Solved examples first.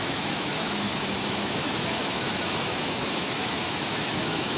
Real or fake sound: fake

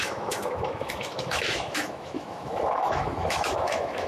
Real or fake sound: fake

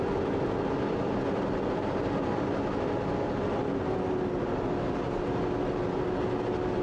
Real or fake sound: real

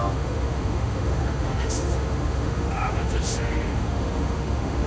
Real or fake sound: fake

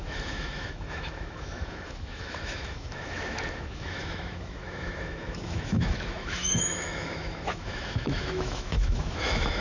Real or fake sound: fake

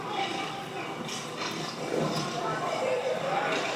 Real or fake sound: real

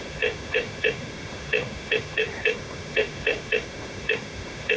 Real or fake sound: fake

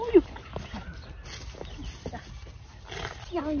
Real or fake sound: real